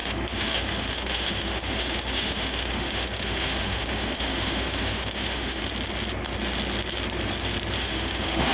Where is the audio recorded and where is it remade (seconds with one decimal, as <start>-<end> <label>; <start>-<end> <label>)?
0.0-5.6 remade; 5.6-7.8 recorded; 7.8-8.5 remade